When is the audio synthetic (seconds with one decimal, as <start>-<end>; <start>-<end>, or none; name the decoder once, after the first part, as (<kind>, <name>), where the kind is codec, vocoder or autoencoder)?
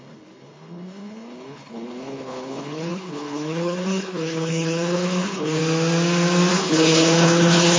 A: 0.0-5.6 (codec, HILCodec); 6.5-7.8